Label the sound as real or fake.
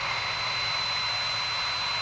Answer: real